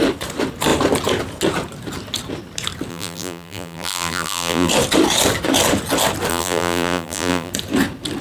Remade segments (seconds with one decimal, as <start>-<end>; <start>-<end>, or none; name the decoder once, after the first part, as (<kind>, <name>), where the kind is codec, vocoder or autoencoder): 2.9-4.7 (vocoder, BigVGAN v2); 6.3-7.5